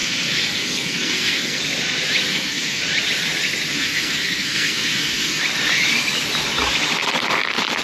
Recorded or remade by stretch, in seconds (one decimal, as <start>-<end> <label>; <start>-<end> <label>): 0.0-1.6 remade; 1.6-2.3 recorded; 2.3-2.8 remade; 2.8-3.7 recorded; 3.7-5.4 remade; 5.4-7.8 recorded